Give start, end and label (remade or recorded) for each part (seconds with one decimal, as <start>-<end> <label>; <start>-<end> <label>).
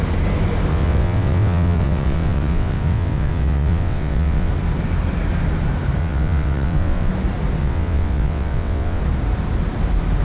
0.0-0.7 recorded; 0.7-4.5 remade; 4.5-6.0 recorded; 6.0-7.1 remade; 7.1-7.6 recorded; 7.6-9.0 remade; 9.0-10.2 recorded